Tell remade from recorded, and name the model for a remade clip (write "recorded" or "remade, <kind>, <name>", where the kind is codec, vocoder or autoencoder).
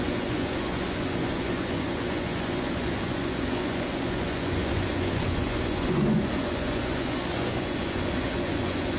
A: remade, vocoder, Vocos